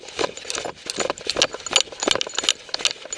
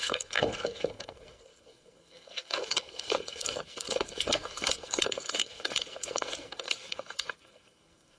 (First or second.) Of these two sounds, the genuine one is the first